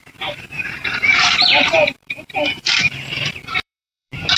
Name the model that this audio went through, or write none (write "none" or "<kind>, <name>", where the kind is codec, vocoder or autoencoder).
vocoder, BigVGAN v2